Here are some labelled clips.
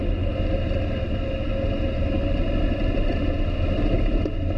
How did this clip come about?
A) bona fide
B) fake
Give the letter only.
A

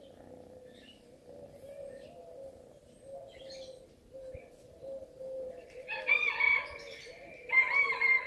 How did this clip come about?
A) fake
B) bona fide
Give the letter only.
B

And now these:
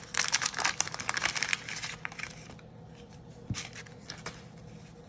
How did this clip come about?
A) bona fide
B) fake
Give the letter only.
A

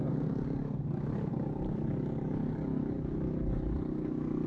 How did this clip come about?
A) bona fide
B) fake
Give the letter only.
B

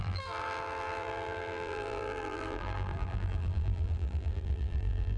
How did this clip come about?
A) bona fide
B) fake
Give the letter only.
B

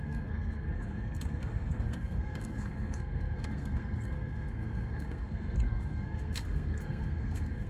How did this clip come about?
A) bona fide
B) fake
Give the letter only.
B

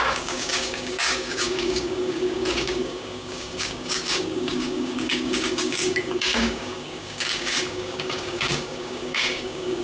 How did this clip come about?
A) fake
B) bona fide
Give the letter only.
A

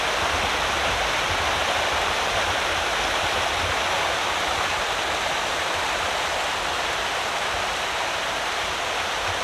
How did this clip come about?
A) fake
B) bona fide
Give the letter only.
B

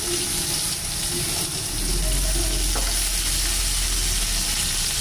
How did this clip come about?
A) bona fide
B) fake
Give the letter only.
A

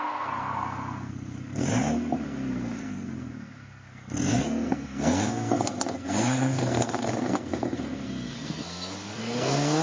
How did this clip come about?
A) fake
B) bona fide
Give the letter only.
A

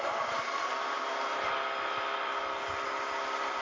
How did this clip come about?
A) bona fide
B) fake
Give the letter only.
A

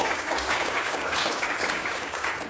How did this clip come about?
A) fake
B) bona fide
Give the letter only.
A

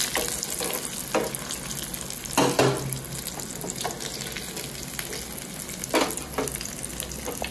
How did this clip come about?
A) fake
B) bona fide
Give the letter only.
B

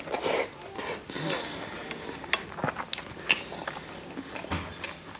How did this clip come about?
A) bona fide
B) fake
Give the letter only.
A